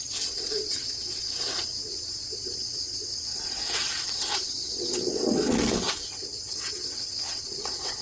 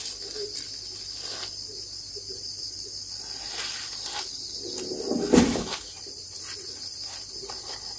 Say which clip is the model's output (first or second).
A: first